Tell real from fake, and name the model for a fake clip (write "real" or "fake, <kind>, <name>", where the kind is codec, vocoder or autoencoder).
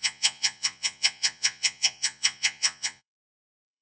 fake, vocoder, Vocos